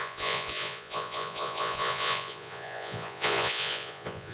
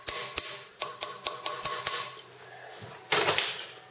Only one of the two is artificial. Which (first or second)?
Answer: first